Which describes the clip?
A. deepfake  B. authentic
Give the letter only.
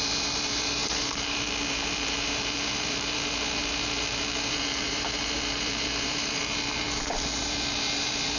A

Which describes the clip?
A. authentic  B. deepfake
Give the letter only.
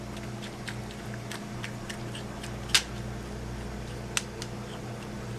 A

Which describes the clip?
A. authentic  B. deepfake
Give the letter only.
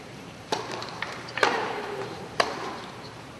B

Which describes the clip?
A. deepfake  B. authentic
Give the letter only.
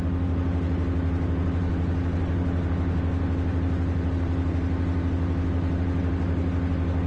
B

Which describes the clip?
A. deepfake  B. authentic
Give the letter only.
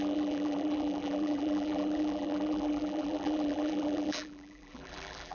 A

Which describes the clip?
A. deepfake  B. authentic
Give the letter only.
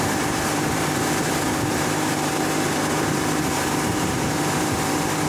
A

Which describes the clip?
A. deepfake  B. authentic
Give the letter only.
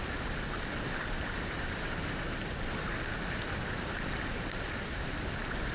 B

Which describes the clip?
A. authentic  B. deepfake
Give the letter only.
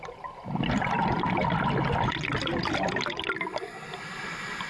A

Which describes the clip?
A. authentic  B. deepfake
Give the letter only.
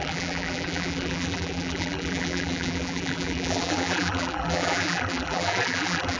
B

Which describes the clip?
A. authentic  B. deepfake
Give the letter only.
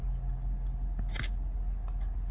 A